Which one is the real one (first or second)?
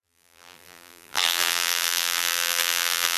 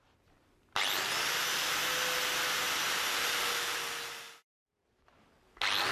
second